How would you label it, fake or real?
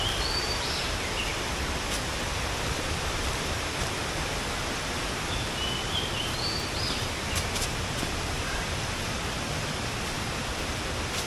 real